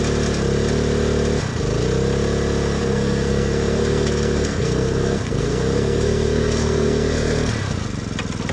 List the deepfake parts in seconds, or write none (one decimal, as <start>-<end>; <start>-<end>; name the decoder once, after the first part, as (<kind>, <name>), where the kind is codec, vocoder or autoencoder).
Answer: 2.8-7.5 (codec, SNAC)